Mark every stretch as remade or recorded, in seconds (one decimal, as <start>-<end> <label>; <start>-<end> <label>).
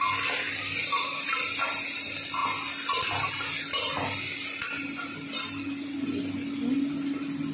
0.0-7.5 recorded